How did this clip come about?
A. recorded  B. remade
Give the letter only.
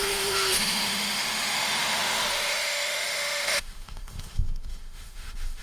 B